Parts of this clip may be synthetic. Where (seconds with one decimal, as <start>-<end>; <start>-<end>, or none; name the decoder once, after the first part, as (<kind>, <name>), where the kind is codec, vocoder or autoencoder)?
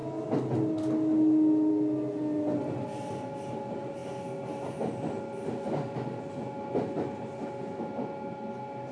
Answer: none